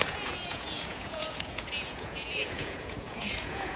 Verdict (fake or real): fake